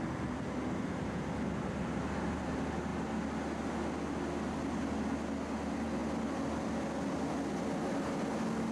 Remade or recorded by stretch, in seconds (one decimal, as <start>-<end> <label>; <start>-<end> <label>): 0.0-8.7 recorded